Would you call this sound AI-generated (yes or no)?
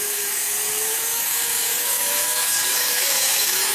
yes